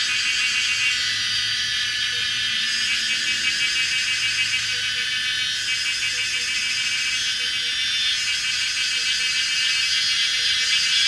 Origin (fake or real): real